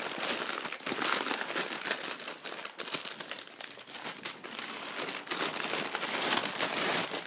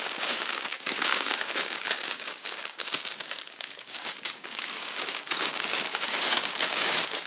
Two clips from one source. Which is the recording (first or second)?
first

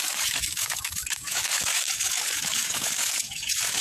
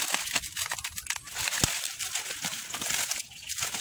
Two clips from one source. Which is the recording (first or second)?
second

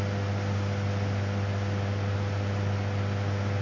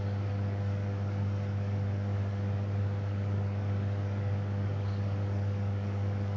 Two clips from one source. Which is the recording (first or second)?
first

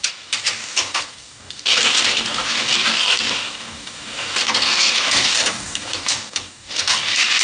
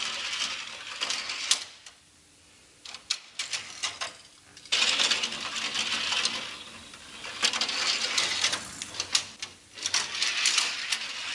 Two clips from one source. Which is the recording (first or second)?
second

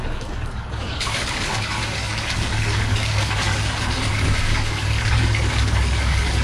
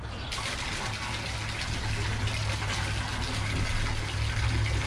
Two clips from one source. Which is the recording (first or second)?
second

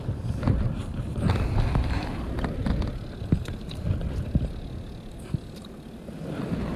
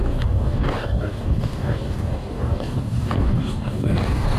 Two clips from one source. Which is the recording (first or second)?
first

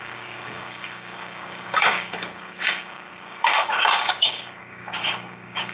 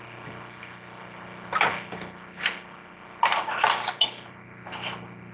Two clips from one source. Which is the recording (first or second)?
second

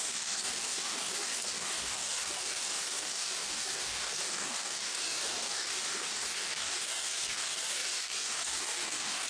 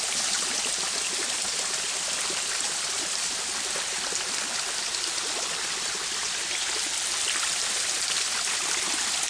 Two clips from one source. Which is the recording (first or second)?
second